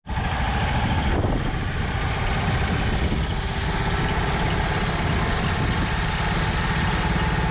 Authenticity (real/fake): real